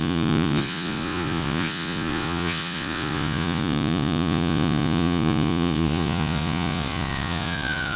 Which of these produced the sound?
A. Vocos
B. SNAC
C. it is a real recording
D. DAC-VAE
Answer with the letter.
A